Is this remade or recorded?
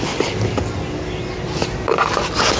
recorded